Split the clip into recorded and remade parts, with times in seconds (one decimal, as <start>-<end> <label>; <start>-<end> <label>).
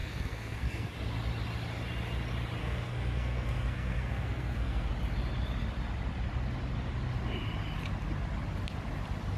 0.0-0.9 remade; 0.9-2.6 recorded; 2.6-4.9 remade; 4.9-9.4 recorded